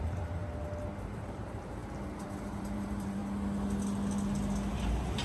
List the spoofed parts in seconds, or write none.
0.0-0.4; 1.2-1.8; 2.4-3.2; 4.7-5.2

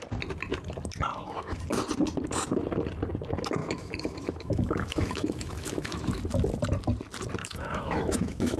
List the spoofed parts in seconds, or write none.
1.1-1.6; 3.6-6.2; 7.4-8.6